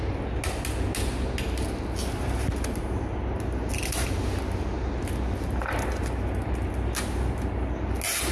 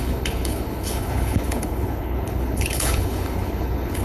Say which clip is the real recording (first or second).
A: first